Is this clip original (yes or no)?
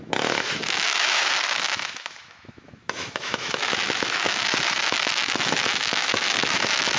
no